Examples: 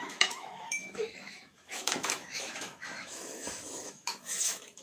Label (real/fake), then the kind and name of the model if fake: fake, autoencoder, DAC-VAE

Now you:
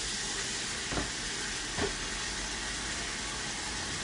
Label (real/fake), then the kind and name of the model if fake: real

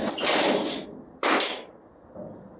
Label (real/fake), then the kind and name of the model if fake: real